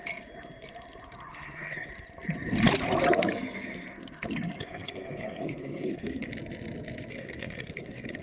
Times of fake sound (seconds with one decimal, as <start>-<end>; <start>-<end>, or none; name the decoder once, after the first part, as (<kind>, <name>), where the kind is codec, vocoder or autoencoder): 1.3-1.9 (codec, SNAC); 4.6-6.3; 7.1-8.2